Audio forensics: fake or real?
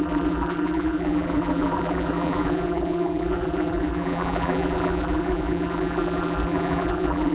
fake